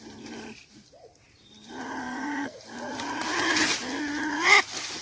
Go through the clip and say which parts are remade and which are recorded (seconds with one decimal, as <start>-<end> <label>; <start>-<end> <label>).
0.0-2.0 recorded; 2.0-2.6 remade; 2.6-5.0 recorded